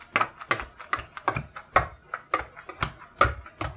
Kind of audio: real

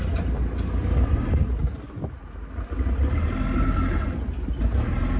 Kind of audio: real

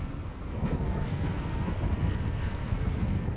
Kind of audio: fake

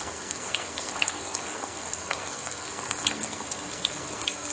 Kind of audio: fake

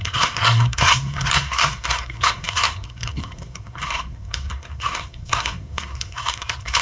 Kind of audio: fake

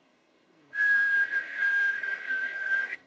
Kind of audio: fake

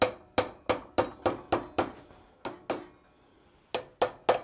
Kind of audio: real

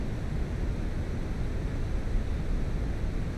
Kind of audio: real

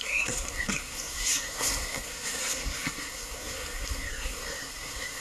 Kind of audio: fake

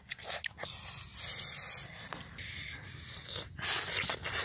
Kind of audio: real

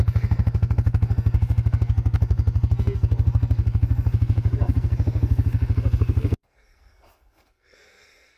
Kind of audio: fake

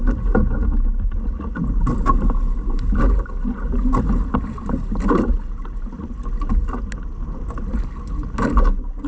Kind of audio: real